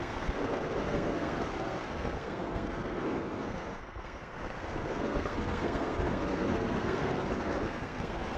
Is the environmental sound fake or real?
fake